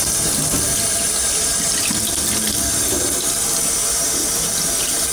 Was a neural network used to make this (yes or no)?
no